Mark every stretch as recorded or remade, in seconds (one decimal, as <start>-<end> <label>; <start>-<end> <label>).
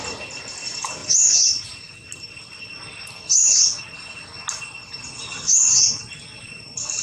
0.0-7.0 recorded